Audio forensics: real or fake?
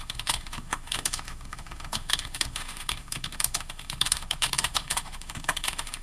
fake